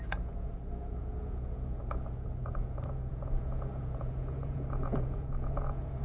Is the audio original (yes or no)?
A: no